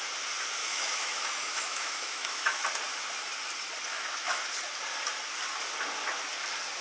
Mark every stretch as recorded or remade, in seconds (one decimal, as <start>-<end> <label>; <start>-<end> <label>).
0.0-0.6 recorded; 0.6-2.6 remade; 2.6-3.9 recorded; 3.9-4.4 remade; 4.4-6.8 recorded

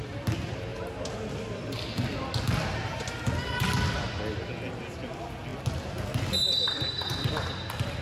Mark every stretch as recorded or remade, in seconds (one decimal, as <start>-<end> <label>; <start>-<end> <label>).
0.0-8.0 recorded

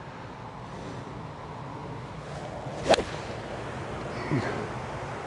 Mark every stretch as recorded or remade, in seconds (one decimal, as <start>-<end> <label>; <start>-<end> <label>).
0.0-5.3 recorded